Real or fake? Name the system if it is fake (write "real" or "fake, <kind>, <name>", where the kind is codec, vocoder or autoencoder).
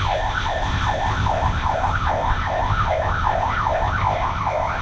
fake, codec, ZipCodec